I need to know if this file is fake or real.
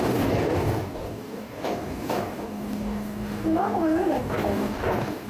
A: fake